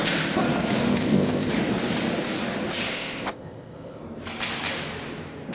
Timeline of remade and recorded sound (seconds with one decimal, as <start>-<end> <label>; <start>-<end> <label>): 0.0-0.9 recorded; 0.9-1.5 remade; 1.5-2.9 recorded; 2.9-4.0 remade; 4.0-5.5 recorded